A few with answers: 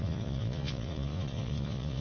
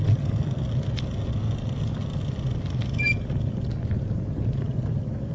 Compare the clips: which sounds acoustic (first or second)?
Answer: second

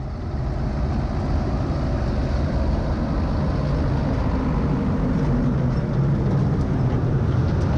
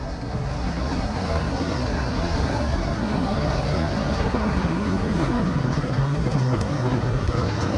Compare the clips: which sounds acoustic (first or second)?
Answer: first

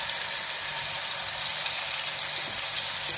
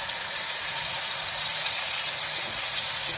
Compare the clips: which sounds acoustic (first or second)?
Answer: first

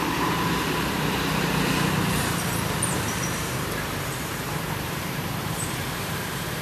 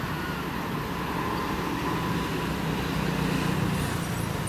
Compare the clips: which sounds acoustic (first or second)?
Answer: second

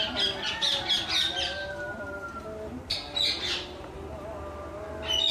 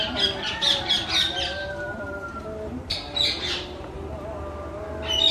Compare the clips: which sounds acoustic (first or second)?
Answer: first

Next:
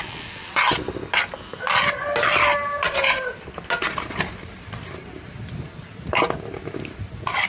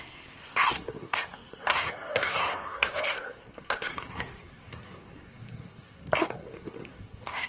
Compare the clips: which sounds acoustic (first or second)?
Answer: first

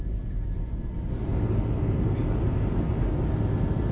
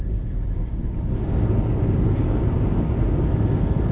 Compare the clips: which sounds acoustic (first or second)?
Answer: first